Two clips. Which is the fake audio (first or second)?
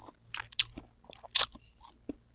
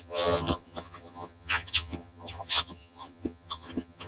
second